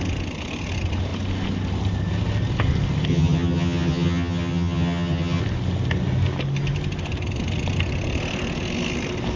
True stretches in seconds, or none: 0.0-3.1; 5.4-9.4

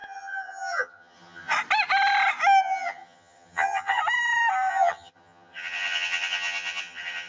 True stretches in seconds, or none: 1.5-2.6; 4.0-4.7

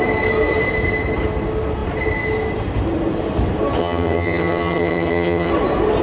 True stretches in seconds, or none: 0.0-3.8; 5.5-6.0

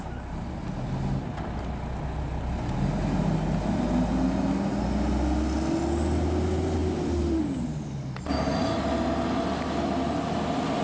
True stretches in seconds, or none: 0.0-10.8

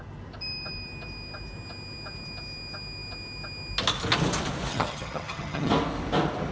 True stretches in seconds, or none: 0.0-4.7; 5.7-6.5

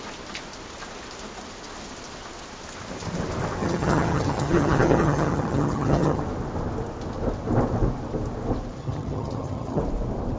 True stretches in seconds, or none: 0.0-3.6; 6.2-8.8; 9.8-10.4